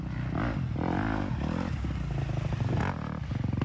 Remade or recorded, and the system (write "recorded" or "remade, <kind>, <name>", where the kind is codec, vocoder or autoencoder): recorded